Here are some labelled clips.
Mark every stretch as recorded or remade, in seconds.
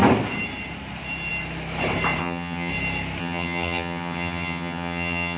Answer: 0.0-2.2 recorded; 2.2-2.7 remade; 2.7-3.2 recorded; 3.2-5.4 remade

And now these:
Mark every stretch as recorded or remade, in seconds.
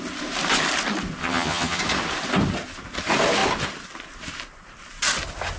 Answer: 0.0-1.2 recorded; 1.2-1.8 remade; 1.8-5.6 recorded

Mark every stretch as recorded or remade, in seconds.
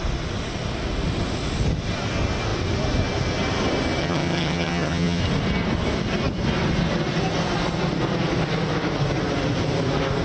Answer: 0.0-4.0 recorded; 4.0-5.2 remade; 5.2-10.2 recorded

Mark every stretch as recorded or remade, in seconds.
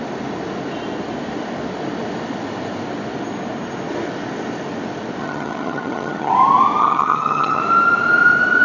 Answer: 0.0-5.2 recorded; 5.2-6.3 remade; 6.3-6.8 recorded; 6.8-7.6 remade; 7.6-8.6 recorded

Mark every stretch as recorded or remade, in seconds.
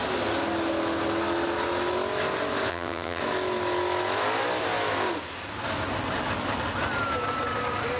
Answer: 0.0-2.7 recorded; 2.7-3.2 remade; 3.2-8.0 recorded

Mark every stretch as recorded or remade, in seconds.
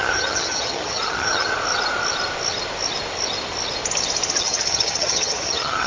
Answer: 0.0-1.5 remade; 1.5-4.4 recorded; 4.4-5.9 remade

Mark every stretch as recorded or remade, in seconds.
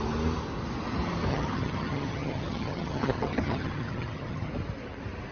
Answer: 0.0-1.3 recorded; 1.3-4.5 remade; 4.5-5.3 recorded